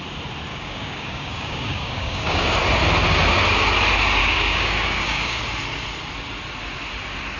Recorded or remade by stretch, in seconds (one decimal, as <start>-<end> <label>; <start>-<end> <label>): 0.0-0.5 recorded; 0.5-2.5 remade; 2.5-4.2 recorded; 4.2-5.4 remade; 5.4-7.4 recorded